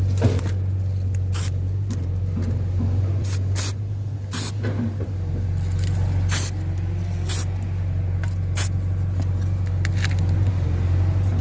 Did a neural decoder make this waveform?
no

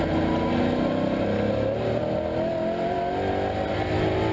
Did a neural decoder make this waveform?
no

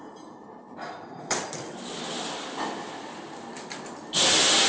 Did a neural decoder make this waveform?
no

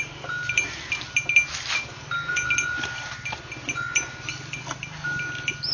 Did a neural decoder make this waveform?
no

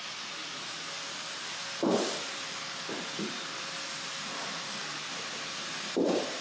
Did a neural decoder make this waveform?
no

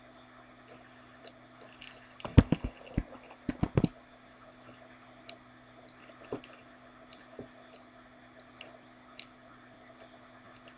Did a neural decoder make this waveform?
no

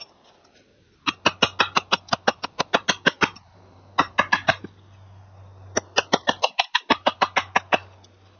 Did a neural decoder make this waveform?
no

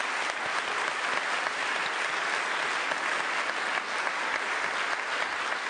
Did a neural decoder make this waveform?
no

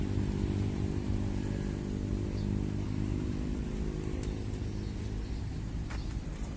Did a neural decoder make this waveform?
no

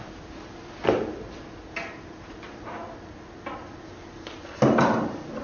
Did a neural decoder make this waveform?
no